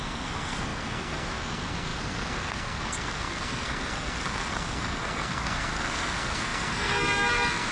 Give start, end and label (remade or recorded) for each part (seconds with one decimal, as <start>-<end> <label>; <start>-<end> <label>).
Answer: 0.0-7.7 remade